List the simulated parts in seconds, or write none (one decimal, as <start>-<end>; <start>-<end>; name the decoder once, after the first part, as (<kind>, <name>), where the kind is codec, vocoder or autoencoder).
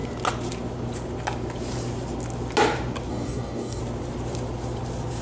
3.1-3.8 (codec, DAC)